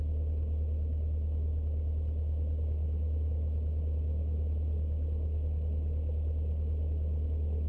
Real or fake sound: real